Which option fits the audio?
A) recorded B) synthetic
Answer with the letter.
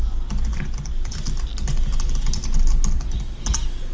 A